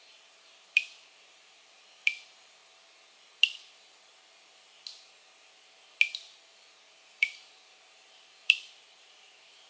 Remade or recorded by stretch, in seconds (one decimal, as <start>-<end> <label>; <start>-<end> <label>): 0.0-2.6 remade; 2.6-6.9 recorded; 6.9-9.7 remade